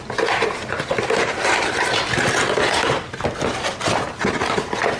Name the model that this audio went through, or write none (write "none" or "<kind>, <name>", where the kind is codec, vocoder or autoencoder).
none